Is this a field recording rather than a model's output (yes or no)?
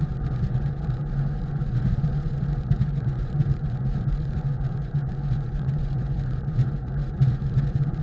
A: no